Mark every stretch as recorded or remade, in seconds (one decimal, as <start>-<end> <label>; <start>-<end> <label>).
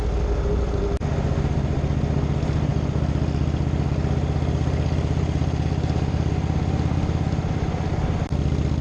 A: 0.0-8.8 recorded